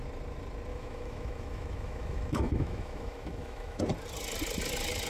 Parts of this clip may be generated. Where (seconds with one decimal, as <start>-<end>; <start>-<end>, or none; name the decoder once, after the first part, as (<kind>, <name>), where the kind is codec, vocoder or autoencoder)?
0.7-3.8 (autoencoder, DAC-VAE)